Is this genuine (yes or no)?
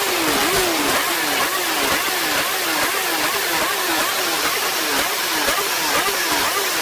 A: yes